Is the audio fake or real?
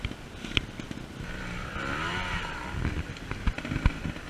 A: real